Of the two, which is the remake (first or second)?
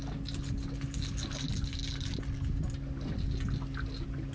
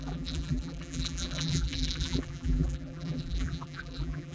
second